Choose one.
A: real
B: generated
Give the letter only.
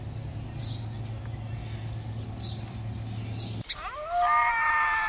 A